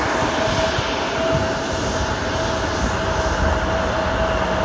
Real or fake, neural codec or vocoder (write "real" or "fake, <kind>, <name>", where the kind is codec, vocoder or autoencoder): real